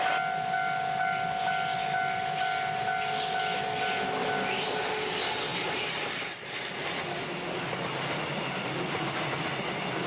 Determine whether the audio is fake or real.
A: real